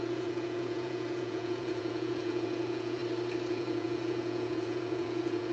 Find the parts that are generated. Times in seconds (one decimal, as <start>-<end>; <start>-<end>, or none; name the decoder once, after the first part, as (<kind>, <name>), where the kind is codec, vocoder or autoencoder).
0.0-3.0 (vocoder, Vocos); 3.5-5.5